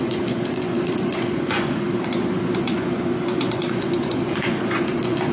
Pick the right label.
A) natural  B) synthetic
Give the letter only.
B